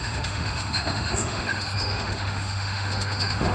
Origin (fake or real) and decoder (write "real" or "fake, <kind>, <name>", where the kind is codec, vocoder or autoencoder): fake, autoencoder, DAC-VAE